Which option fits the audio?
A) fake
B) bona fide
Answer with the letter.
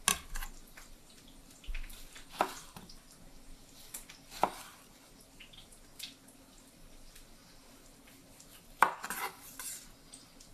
B